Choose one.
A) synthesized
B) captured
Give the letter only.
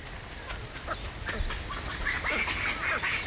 B